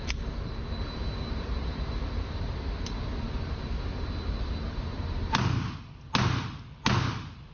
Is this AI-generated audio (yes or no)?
no